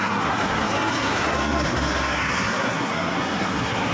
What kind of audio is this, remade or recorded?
remade